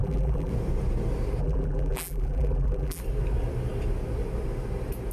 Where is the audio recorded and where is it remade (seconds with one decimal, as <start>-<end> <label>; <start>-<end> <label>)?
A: 0.0-0.5 remade; 0.5-1.4 recorded; 1.4-3.0 remade; 3.0-5.1 recorded